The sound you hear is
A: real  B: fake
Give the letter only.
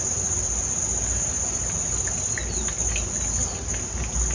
A